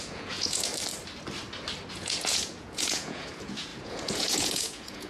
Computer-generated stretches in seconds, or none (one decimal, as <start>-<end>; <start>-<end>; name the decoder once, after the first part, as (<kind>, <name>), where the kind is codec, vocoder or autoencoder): 0.0-0.7 (vocoder, Vocos); 1.9-5.1

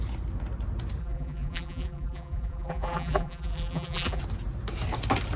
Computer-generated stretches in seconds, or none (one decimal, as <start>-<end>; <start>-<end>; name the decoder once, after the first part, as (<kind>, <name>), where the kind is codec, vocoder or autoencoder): 1.0-4.2 (vocoder, BigVGAN v2)

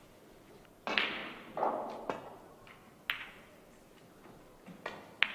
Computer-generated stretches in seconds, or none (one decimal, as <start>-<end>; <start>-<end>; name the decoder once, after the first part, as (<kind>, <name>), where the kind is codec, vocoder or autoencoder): none

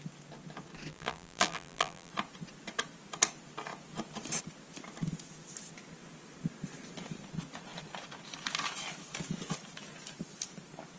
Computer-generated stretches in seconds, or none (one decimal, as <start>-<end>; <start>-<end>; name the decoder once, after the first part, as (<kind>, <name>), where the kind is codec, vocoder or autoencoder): 0.9-2.1 (vocoder, BigVGAN v2)

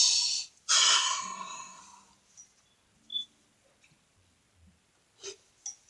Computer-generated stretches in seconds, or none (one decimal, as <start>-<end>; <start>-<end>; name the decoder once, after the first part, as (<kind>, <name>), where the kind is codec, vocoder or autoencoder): 0.9-1.8 (codec, SNAC)

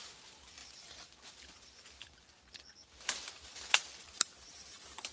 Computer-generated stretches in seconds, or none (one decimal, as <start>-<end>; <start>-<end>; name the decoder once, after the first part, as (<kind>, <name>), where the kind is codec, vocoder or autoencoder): none